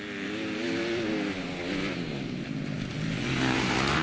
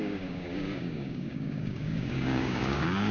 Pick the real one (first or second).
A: first